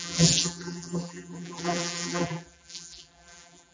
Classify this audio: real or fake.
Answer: fake